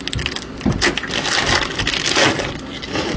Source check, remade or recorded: recorded